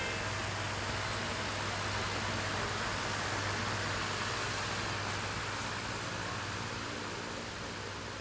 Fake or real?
real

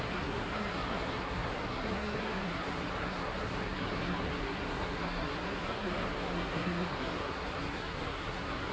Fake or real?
fake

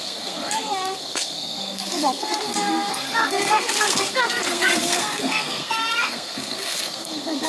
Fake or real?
fake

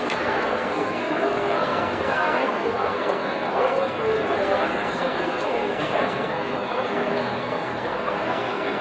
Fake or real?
fake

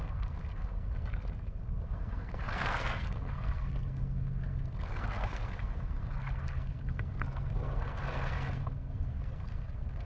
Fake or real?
fake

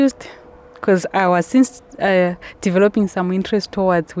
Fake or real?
real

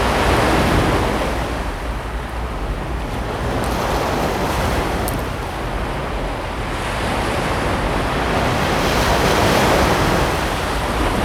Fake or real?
real